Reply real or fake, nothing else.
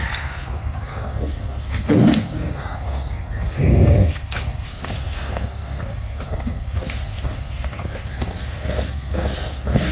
fake